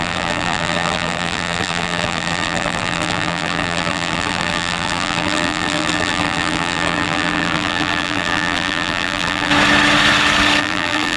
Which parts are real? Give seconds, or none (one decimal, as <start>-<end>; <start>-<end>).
9.5-10.6

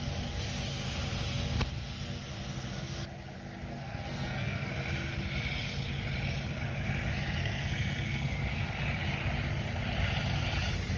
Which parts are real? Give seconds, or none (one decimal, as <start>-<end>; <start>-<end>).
0.0-3.7; 4.7-7.4; 8.6-11.0

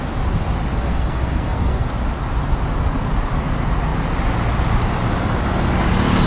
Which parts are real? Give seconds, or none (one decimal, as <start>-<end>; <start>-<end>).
0.0-0.7; 1.9-6.3